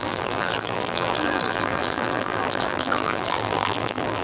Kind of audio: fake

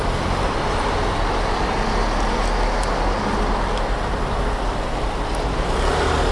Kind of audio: real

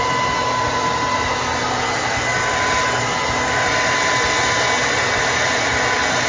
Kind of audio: real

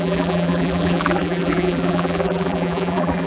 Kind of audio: fake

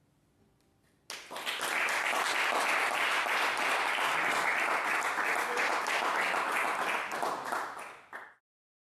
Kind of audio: real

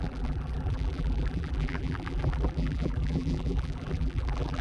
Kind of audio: fake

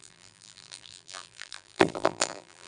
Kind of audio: fake